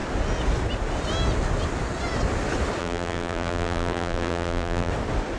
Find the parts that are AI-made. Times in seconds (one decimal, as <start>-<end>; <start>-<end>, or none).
2.8-4.9